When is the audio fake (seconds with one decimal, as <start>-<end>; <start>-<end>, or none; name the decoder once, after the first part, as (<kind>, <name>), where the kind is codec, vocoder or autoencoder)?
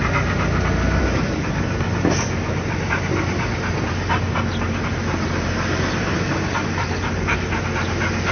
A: none